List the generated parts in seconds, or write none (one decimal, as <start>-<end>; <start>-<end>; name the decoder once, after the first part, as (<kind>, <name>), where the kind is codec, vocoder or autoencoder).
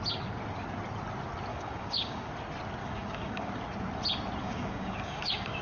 1.5-2.3 (codec, DAC); 2.8-3.5; 4.4-5.6